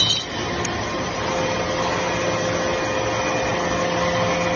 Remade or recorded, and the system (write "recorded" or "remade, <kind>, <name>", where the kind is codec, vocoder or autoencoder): recorded